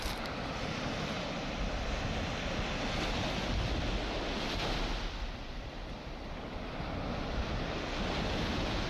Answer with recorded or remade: recorded